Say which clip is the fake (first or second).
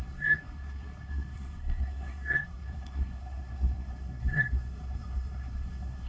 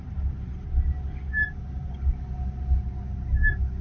first